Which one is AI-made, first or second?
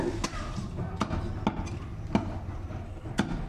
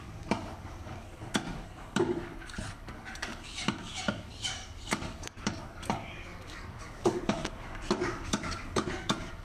second